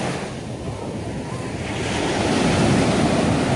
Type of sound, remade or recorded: recorded